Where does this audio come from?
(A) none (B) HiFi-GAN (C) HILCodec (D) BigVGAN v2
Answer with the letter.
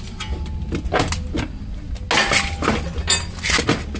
A